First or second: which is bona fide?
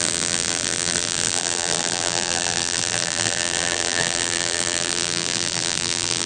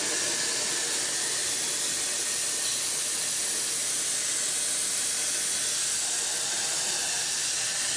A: second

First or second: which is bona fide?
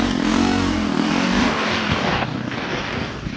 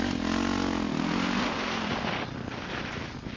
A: second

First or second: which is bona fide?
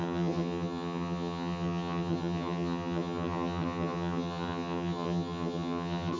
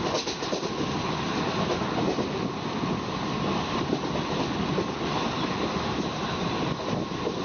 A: second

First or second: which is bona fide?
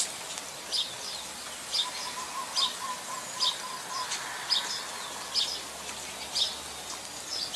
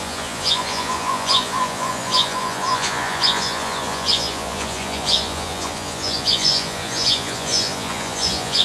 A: first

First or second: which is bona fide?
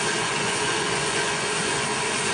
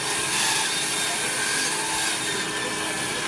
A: second